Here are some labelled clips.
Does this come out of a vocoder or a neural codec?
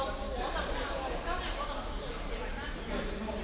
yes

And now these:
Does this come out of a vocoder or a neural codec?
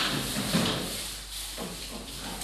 yes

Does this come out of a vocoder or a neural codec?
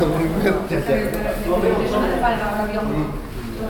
no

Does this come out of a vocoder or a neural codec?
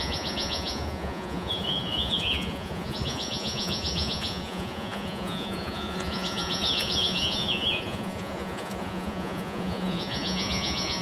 yes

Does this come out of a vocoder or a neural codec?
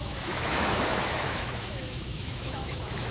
yes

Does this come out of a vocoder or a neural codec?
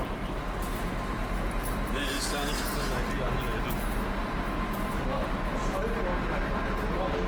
no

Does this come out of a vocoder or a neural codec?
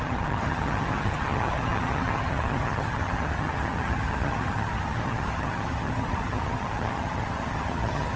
yes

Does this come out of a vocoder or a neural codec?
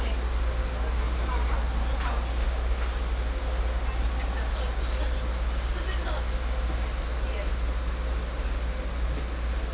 no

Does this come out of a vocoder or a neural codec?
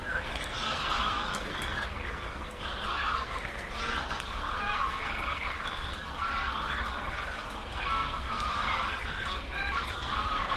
yes